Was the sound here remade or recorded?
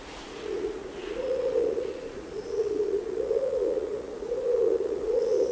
remade